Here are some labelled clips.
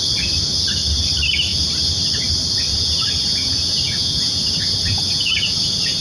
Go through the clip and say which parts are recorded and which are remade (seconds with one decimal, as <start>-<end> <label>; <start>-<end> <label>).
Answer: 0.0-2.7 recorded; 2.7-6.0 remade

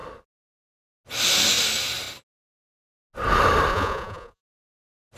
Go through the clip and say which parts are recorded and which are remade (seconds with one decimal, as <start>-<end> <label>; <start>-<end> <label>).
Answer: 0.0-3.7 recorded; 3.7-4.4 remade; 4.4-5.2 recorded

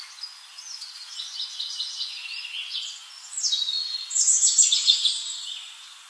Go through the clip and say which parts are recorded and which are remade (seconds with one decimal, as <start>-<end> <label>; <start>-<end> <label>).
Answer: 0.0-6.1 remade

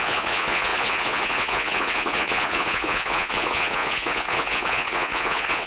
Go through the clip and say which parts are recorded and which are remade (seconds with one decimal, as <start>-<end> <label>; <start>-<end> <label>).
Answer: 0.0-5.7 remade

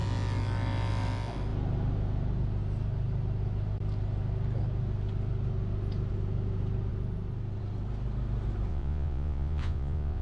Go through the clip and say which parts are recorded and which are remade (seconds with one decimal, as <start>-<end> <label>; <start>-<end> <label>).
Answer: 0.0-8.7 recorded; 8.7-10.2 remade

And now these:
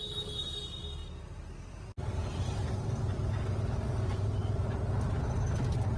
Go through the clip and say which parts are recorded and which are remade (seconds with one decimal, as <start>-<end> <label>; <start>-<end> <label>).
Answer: 0.0-6.0 recorded

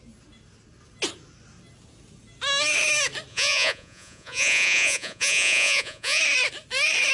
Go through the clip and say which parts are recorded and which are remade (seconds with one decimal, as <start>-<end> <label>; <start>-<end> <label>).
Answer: 0.0-3.3 recorded; 3.3-6.2 remade; 6.2-7.1 recorded

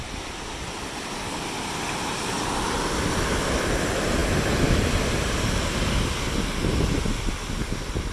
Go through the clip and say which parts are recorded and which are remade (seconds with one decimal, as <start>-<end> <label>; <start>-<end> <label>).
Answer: 0.0-8.1 recorded